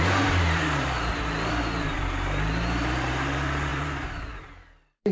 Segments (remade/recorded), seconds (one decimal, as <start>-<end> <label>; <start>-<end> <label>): 0.0-5.1 remade